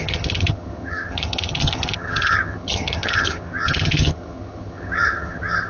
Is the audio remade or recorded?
remade